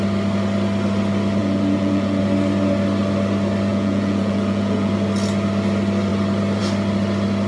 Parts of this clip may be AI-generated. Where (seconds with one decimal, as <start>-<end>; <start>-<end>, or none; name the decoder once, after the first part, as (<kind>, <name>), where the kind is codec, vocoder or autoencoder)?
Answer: 1.4-2.2 (vocoder, Vocos); 3.7-4.9